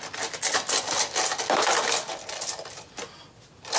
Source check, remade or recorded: recorded